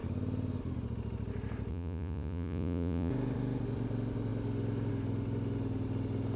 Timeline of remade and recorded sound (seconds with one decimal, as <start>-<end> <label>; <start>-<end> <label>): 0.0-1.7 recorded; 1.7-3.1 remade; 3.1-6.4 recorded